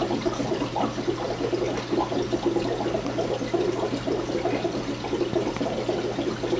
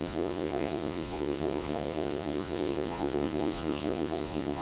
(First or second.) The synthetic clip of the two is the second